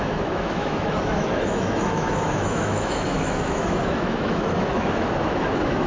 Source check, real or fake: fake